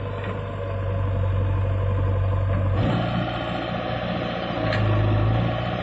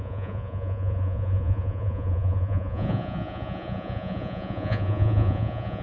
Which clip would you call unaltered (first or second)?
first